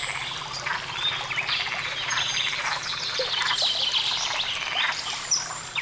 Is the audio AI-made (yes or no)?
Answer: yes